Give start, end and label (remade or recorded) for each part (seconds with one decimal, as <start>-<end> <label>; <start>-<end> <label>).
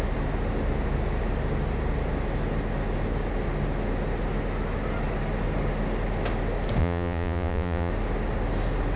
0.0-6.8 recorded; 6.8-7.9 remade; 7.9-9.0 recorded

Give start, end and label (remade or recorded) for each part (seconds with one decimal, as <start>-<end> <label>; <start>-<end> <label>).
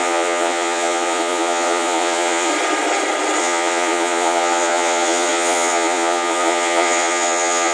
0.0-2.5 remade; 2.5-3.4 recorded; 3.4-7.7 remade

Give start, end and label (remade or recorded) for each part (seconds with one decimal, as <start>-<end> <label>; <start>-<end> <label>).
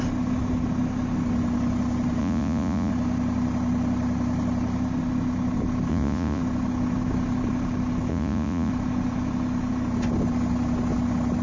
0.0-2.2 recorded; 2.2-2.9 remade; 2.9-5.9 recorded; 5.9-6.4 remade; 6.4-8.1 recorded; 8.1-8.7 remade; 8.7-11.4 recorded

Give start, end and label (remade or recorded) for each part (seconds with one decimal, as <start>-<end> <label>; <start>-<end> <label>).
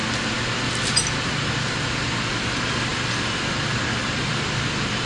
0.0-5.1 recorded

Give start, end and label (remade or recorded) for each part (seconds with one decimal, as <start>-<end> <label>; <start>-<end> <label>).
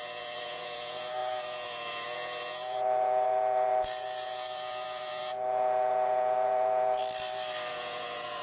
0.0-7.0 remade; 7.0-7.7 recorded; 7.7-8.4 remade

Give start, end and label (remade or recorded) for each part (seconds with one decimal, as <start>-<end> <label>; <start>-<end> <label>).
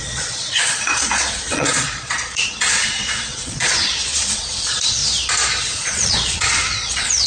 0.0-5.0 remade; 5.0-5.6 recorded; 5.6-7.3 remade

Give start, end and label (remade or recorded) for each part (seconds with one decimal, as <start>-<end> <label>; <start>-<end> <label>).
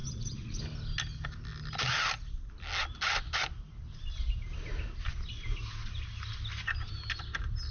0.0-0.6 remade; 0.6-7.7 recorded